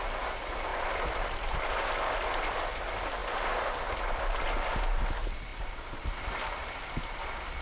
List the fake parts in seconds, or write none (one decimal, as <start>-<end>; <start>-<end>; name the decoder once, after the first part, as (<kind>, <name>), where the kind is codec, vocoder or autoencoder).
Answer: none